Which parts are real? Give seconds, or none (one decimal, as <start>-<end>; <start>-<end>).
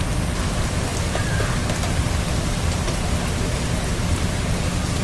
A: 0.0-5.0